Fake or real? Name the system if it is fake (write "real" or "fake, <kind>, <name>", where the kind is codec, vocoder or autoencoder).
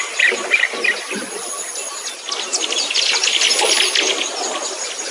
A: real